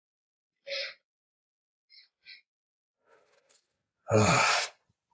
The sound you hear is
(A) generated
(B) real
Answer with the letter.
B